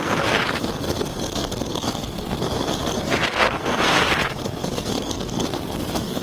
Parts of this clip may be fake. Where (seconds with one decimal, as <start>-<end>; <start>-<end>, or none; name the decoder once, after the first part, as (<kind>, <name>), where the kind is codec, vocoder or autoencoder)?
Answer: 0.0-6.2 (codec, SNAC)